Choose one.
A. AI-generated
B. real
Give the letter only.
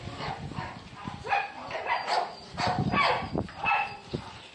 B